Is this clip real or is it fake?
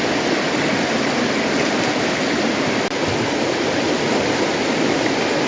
real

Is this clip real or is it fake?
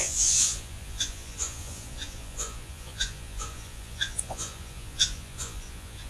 fake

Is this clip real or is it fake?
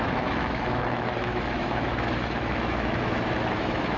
fake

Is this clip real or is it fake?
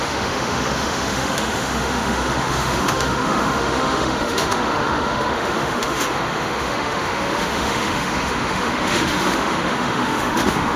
fake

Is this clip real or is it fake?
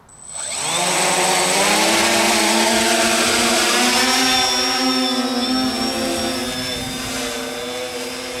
real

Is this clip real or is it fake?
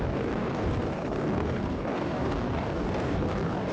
fake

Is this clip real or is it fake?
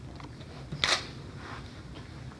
real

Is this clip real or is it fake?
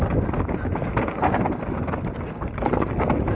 real